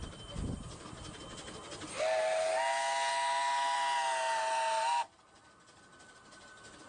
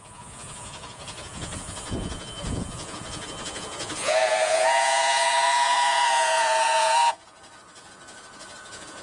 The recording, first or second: first